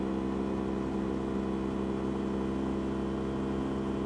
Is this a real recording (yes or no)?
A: yes